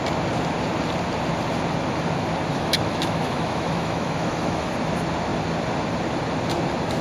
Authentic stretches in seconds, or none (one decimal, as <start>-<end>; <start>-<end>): 0.0-2.5; 4.7-7.0